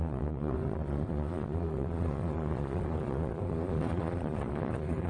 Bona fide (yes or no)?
no